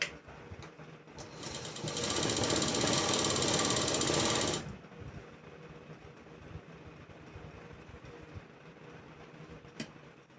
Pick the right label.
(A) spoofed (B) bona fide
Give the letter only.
B